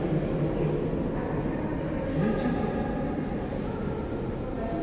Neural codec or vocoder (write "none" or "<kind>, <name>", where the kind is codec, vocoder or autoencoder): none